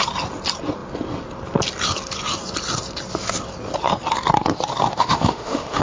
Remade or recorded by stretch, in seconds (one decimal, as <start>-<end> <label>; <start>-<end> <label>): 0.0-4.9 recorded; 4.9-5.8 remade